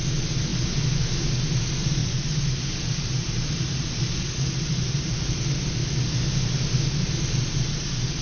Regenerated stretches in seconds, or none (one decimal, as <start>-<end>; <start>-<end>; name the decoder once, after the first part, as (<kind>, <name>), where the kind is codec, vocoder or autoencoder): 2.0-5.4 (vocoder, BigVGAN v2)